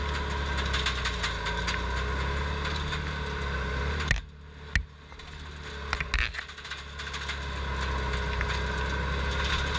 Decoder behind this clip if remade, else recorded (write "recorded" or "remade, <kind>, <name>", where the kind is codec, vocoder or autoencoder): recorded